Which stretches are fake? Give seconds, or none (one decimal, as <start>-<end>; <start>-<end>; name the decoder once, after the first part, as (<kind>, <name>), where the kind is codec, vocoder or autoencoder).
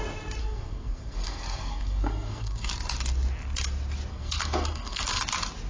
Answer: 0.4-2.7 (codec, SNAC); 4.1-5.2